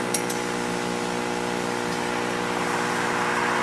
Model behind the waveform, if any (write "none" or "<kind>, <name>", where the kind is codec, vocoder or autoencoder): none